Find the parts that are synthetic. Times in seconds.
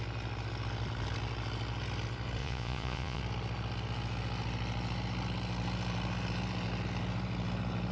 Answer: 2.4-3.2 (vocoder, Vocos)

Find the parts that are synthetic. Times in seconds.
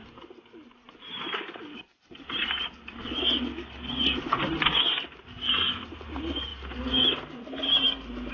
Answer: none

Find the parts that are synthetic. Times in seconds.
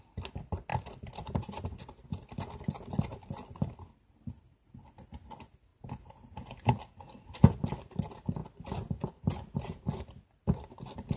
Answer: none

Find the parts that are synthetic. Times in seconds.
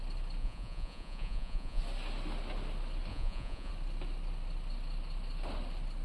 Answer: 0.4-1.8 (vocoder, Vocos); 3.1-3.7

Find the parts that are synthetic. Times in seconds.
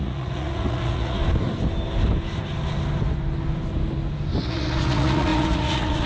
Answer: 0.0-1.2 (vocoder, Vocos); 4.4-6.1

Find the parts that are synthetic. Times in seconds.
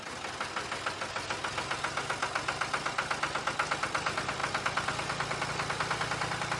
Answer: none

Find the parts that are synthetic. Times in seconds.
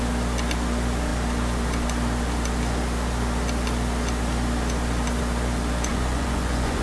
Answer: 5.9-6.8 (vocoder, Vocos)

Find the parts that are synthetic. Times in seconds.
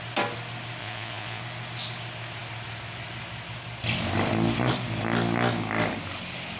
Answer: 0.8-1.4 (vocoder, Vocos)